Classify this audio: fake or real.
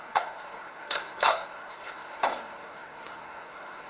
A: fake